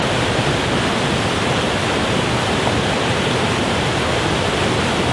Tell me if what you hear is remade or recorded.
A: recorded